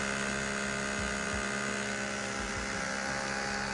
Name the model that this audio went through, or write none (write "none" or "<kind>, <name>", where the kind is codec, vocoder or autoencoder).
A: none